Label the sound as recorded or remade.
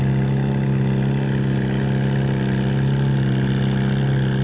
recorded